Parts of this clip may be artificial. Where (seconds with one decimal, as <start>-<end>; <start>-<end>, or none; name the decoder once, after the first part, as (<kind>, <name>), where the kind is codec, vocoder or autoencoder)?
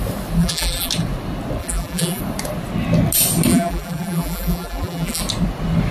0.4-0.9 (vocoder, BigVGAN v2); 1.6-2.2; 3.5-5.2